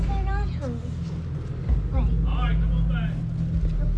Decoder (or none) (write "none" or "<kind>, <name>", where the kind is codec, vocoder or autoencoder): none